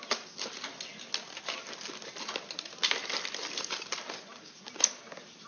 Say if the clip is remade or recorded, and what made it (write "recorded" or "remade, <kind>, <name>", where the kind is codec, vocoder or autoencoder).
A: recorded